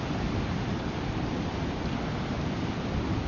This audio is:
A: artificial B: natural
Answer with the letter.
B